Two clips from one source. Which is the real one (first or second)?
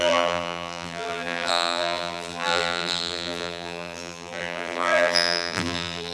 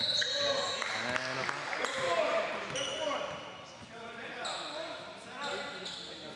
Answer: second